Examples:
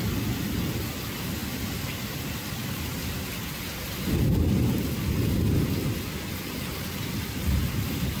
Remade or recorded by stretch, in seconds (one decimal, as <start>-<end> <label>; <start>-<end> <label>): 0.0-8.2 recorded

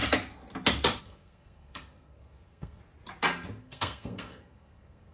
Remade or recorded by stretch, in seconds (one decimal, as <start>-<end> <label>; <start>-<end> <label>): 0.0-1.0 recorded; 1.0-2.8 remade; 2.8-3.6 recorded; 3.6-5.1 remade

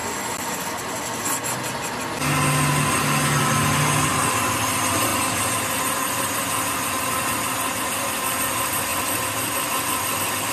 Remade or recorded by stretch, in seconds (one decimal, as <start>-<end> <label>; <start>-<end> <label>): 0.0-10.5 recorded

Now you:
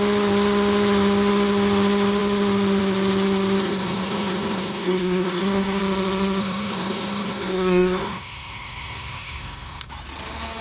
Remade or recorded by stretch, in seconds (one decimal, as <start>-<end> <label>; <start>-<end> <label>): 0.0-3.6 recorded; 3.6-5.8 remade; 5.8-6.4 recorded; 6.4-9.9 remade; 9.9-10.6 recorded